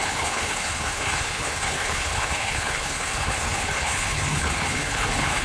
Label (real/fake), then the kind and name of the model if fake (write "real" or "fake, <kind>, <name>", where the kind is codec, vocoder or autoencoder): fake, codec, HILCodec